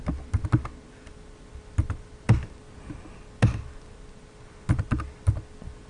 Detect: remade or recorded recorded